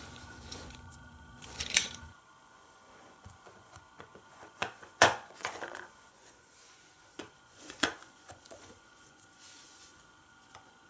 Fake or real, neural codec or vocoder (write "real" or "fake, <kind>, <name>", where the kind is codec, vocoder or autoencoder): fake, vocoder, Vocos